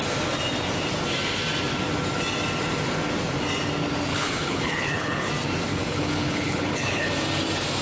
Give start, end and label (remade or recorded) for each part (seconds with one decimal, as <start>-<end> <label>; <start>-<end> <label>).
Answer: 0.0-4.1 recorded; 4.1-5.3 remade; 5.3-5.7 recorded; 5.7-7.1 remade; 7.1-7.8 recorded